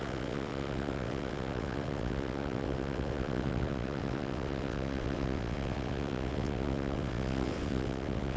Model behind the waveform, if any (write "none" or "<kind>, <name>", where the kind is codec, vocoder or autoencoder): vocoder, WaveNeXt